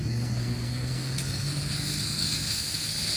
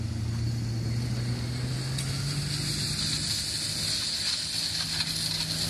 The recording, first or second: second